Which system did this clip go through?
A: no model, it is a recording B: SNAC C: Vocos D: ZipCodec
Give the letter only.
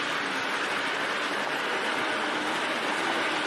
A